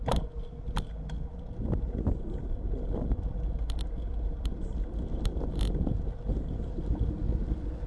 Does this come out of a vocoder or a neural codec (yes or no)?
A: no